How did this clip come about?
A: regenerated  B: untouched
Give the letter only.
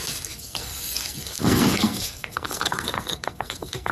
A